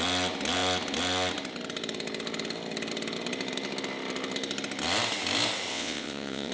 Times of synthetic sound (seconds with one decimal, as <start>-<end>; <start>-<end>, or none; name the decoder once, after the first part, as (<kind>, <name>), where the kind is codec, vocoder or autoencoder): 5.7-6.5 (vocoder, WaveNeXt)